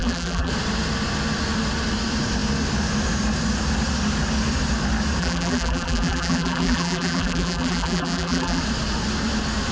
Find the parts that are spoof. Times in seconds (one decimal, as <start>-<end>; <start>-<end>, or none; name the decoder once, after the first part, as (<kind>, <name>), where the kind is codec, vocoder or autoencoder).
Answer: 0.0-0.5 (vocoder, BigVGAN v2); 5.2-8.6